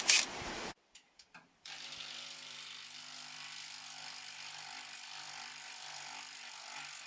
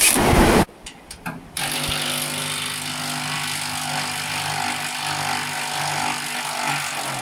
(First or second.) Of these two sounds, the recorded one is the second